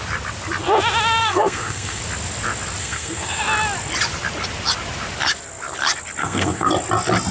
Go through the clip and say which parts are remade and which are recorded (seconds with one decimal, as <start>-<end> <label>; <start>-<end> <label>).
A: 0.0-1.2 recorded; 1.2-2.0 remade; 2.0-2.8 recorded; 2.8-3.4 remade; 3.4-6.2 recorded; 6.2-6.7 remade; 6.7-7.3 recorded